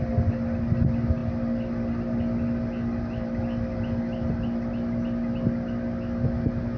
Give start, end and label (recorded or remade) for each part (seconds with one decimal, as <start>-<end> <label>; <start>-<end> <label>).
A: 0.0-6.8 recorded